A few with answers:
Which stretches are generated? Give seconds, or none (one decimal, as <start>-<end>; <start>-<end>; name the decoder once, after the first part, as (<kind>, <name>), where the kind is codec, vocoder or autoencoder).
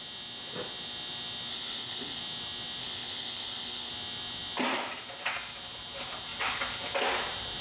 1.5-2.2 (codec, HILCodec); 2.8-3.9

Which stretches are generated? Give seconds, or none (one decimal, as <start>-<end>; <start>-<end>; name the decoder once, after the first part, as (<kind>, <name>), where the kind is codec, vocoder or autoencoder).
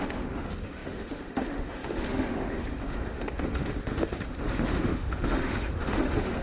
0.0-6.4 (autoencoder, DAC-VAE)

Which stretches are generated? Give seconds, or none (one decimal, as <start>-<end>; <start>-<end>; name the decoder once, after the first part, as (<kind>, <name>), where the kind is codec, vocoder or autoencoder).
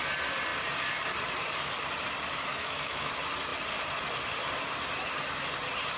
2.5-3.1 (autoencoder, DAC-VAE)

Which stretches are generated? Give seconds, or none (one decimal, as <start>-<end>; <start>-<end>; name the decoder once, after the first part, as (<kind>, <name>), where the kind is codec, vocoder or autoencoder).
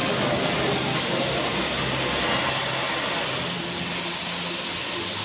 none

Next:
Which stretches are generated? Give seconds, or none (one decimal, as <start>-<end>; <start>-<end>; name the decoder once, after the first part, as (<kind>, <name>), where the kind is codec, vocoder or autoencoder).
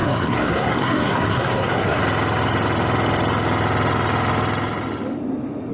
0.0-2.0 (codec, SNAC)